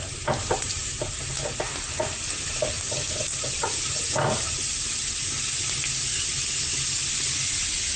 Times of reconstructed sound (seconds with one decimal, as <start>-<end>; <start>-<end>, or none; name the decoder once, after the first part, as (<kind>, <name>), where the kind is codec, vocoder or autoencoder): none